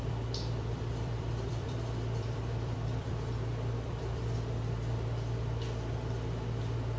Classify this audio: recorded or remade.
remade